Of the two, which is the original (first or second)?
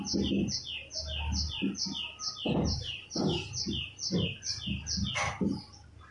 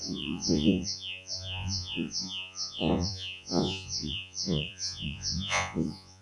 first